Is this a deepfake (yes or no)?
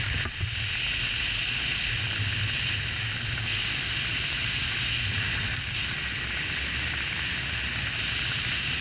no